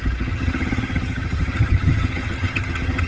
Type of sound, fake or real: fake